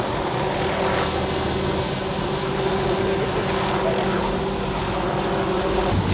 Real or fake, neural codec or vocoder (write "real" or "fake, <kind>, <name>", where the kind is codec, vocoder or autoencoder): real